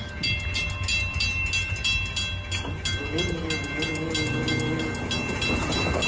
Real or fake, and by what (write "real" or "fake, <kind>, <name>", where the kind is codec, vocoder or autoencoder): real